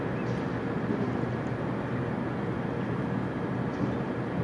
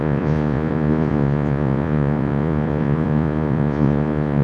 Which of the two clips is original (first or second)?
first